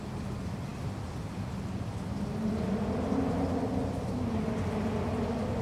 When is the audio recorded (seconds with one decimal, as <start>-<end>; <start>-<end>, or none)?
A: 0.0-5.6